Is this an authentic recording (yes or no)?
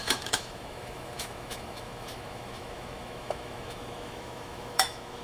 no